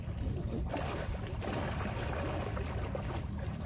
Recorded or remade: recorded